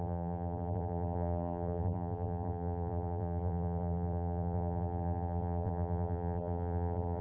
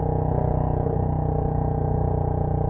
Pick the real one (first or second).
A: second